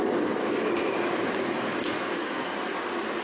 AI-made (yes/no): no